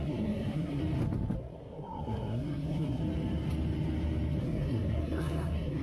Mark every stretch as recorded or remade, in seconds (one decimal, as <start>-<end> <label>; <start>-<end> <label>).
0.0-0.8 remade; 0.8-1.4 recorded; 1.4-3.0 remade; 3.0-4.4 recorded; 4.4-5.8 remade